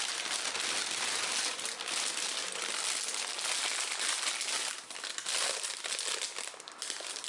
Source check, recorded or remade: recorded